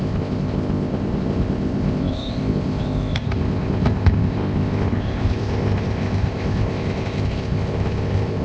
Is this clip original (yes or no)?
no